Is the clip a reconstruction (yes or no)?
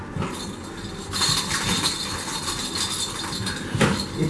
no